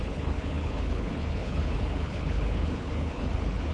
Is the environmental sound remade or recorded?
remade